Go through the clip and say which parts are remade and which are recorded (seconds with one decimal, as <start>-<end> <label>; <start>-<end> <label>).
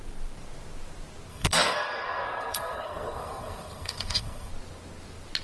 0.0-1.3 recorded; 1.3-4.5 remade; 4.5-5.4 recorded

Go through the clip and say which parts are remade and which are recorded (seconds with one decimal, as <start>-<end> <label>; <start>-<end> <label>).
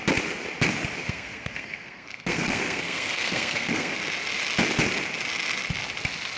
0.0-1.0 recorded; 1.0-4.0 remade; 4.0-6.4 recorded